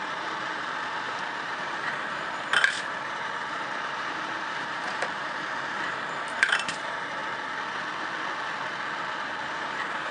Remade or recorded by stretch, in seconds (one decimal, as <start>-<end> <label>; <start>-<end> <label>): 0.0-7.2 remade; 7.2-9.2 recorded; 9.2-10.1 remade

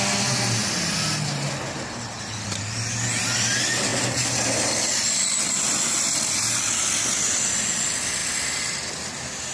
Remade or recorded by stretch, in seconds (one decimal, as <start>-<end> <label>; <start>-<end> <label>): 0.0-3.9 recorded; 3.9-6.5 remade; 6.5-9.5 recorded